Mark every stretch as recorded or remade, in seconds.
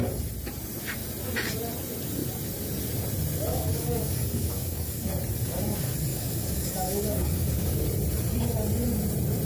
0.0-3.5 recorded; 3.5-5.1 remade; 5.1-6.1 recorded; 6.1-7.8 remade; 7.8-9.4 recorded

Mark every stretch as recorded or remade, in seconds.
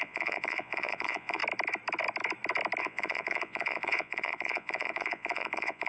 0.0-1.4 remade; 1.4-2.8 recorded; 2.8-5.9 remade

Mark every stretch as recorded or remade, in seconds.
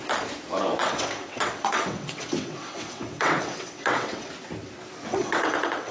0.0-0.8 recorded; 0.8-4.3 remade; 4.3-5.1 recorded; 5.1-5.9 remade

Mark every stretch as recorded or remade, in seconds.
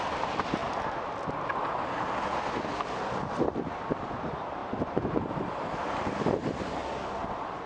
0.0-0.6 remade; 0.6-2.8 recorded; 2.8-6.8 remade; 6.8-7.7 recorded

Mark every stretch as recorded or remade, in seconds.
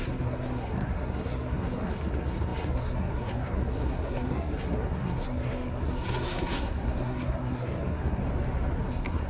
0.0-8.2 remade; 8.2-8.8 recorded; 8.8-9.3 remade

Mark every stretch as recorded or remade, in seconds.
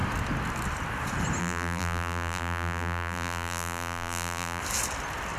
0.0-1.4 recorded; 1.4-4.6 remade; 4.6-5.4 recorded